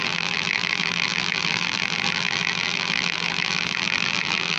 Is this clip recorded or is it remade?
remade